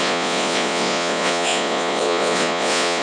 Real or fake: fake